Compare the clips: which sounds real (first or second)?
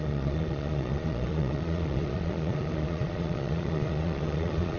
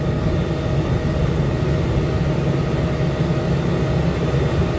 second